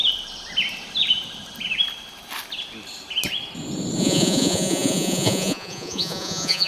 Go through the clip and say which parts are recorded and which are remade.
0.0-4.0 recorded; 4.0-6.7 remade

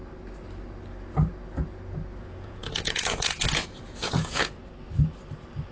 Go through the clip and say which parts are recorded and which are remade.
0.0-2.2 recorded; 2.2-4.6 remade; 4.6-5.7 recorded

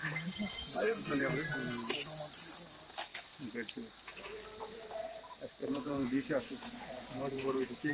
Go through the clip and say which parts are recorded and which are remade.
0.0-1.2 remade; 1.2-5.6 recorded; 5.6-7.9 remade

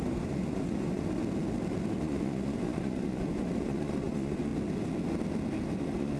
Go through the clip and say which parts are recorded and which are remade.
0.0-1.2 remade; 1.2-2.0 recorded; 2.0-4.5 remade; 4.5-5.8 recorded; 5.8-6.2 remade

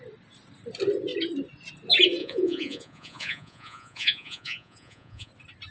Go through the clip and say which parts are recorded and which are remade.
0.0-2.2 recorded; 2.2-5.3 remade; 5.3-5.7 recorded